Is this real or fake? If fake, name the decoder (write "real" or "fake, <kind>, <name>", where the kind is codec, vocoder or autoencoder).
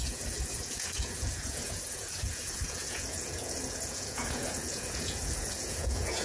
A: fake, vocoder, Vocos